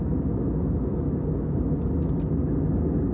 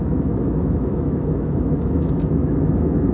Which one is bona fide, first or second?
first